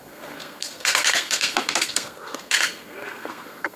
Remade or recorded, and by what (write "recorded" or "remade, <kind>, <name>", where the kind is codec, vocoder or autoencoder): remade, codec, SNAC